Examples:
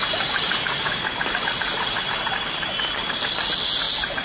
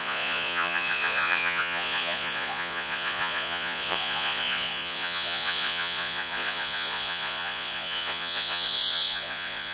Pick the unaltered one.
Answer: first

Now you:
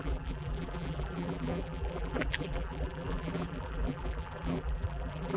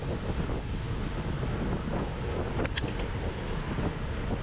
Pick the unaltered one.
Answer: second